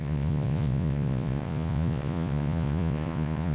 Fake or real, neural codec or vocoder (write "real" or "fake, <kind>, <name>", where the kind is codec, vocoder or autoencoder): fake, vocoder, Vocos